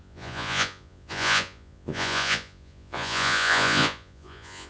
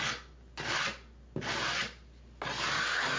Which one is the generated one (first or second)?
first